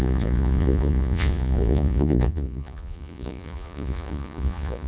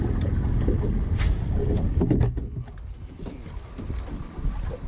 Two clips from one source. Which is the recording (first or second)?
second